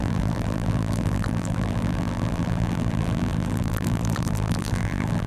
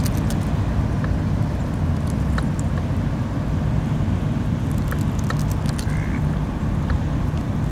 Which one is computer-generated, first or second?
first